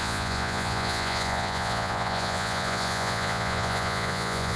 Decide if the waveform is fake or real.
fake